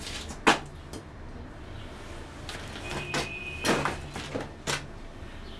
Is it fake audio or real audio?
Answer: real